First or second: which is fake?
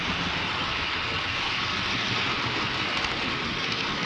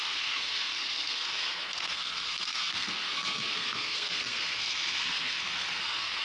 second